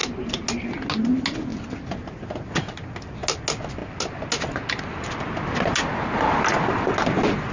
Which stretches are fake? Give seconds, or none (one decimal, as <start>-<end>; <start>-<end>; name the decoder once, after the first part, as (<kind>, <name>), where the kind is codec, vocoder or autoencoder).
none